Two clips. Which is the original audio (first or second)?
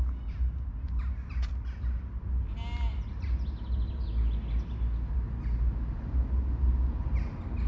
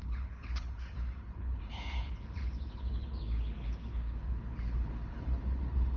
first